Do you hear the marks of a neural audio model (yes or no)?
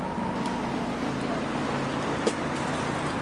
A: no